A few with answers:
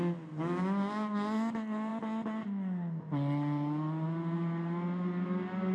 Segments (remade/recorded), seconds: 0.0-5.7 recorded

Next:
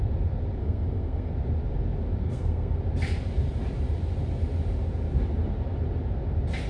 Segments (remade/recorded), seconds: 0.0-0.6 recorded; 0.6-1.3 remade; 1.3-2.2 recorded; 2.2-2.8 remade; 2.8-6.7 recorded

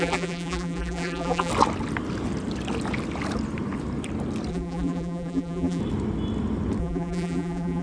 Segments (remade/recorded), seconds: 0.0-1.5 remade; 1.5-4.5 recorded; 4.5-5.8 remade; 5.8-6.8 recorded; 6.8-7.8 remade